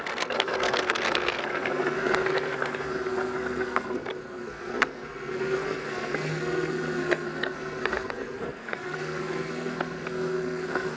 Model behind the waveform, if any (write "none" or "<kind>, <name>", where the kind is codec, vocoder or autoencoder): codec, SNAC